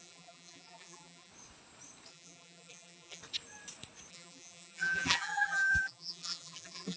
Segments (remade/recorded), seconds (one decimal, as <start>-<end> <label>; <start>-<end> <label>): 0.0-1.3 remade; 1.3-2.1 recorded; 2.1-3.2 remade; 3.2-4.1 recorded; 4.1-7.0 remade